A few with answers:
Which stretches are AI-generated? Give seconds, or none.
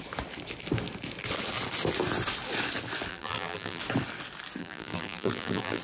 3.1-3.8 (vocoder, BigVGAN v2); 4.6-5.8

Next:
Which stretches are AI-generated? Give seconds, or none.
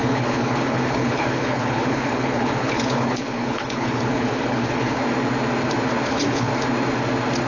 0.0-5.0 (codec, HILCodec); 6.1-6.5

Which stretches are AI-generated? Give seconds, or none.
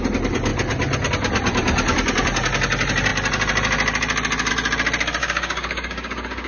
5.2-6.5 (codec, DAC)